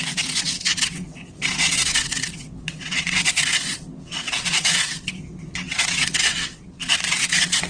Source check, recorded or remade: remade